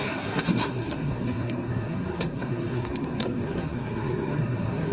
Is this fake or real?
fake